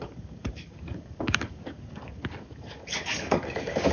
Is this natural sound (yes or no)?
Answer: no